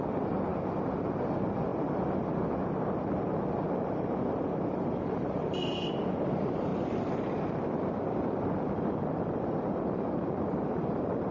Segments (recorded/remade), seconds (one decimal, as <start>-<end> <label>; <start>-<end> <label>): 0.0-1.7 remade; 1.7-4.3 recorded; 4.3-6.7 remade; 6.7-8.2 recorded; 8.2-11.3 remade